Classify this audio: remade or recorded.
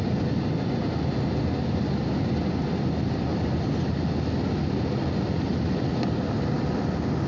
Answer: recorded